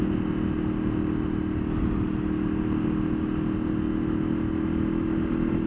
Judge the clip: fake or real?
real